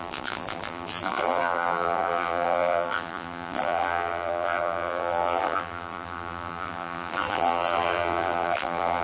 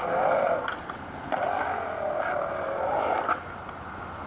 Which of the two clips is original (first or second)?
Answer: second